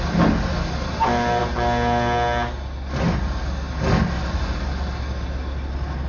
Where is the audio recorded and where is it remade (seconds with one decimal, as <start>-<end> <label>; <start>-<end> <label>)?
0.0-6.1 recorded